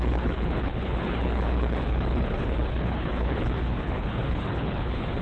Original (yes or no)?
no